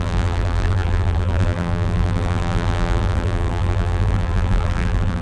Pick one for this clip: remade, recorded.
remade